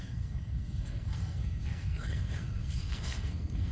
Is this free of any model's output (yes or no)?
no